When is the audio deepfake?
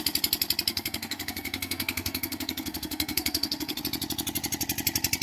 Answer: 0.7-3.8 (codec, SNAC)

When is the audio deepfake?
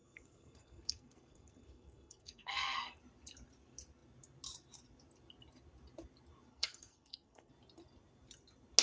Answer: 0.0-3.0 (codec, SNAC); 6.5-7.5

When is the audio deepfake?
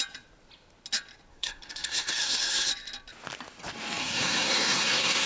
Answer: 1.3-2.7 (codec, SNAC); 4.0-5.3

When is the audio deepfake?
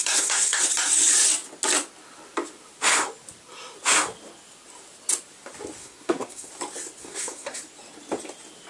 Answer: 0.0-0.6 (codec, SNAC); 5.8-6.5; 7.0-7.6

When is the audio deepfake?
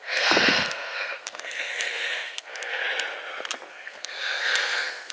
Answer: 0.0-2.8 (codec, SNAC); 3.7-5.1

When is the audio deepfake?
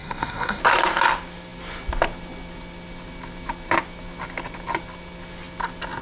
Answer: 0.0-0.6 (codec, SNAC)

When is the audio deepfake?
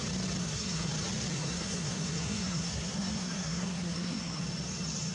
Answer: 0.4-0.9 (codec, SNAC); 1.3-4.4